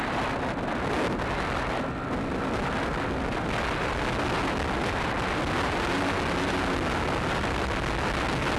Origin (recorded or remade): recorded